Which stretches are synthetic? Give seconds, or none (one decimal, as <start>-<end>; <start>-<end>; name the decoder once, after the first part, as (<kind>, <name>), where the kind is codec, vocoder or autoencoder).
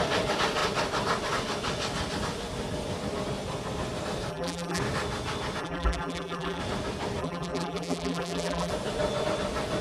4.3-4.8 (vocoder, BigVGAN v2); 5.6-6.6; 7.2-8.7